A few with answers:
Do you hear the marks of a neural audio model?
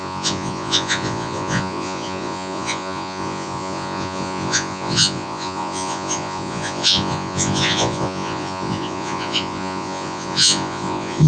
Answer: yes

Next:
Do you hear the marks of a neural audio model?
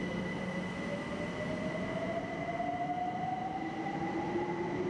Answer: no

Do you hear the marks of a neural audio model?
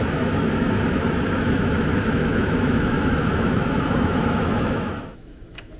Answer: yes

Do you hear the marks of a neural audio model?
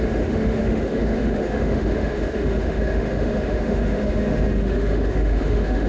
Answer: yes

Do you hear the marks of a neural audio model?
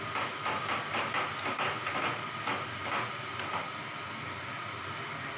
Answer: no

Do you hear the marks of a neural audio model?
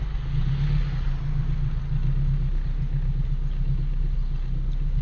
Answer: no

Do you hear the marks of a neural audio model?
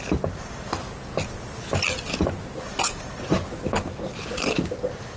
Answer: no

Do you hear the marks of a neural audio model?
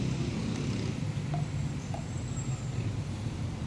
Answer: no